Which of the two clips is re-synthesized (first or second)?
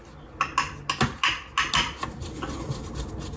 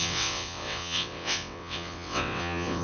second